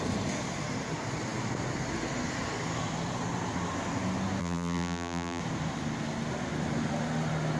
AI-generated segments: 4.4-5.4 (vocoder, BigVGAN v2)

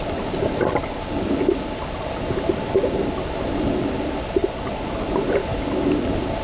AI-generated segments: none

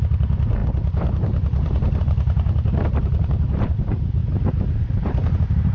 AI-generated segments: 0.0-5.7 (vocoder, BigVGAN v2)